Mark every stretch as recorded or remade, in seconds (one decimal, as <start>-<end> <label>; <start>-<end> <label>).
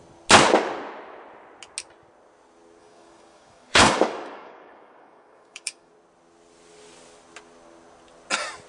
0.0-2.8 recorded; 2.8-5.9 remade; 5.9-8.7 recorded